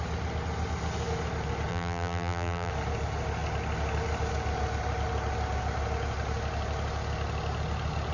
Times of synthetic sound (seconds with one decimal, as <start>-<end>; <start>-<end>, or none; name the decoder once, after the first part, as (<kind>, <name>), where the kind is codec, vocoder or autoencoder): 1.7-2.7 (vocoder, BigVGAN v2)